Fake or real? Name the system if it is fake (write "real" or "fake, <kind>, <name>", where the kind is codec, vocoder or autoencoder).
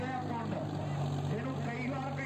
real